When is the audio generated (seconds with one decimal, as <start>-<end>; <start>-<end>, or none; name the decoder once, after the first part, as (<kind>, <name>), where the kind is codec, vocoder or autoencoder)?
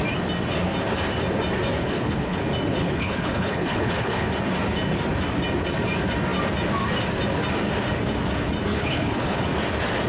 1.8-2.4 (codec, HILCodec); 2.8-4.3; 8.7-9.4